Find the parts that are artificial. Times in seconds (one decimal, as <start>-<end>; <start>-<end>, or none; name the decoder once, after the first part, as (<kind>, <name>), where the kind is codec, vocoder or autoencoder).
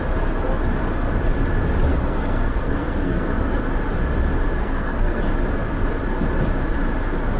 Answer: 1.9-3.6 (codec, SNAC); 4.6-5.2